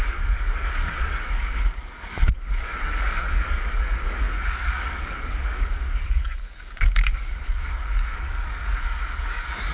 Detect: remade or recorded remade